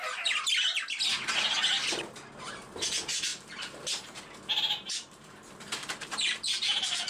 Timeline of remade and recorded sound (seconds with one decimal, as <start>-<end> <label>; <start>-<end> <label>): 0.0-3.3 recorded; 3.3-4.2 remade; 4.2-4.8 recorded; 4.8-7.1 remade